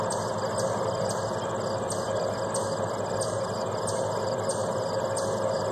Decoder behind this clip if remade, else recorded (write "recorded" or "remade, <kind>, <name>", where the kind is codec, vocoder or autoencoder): recorded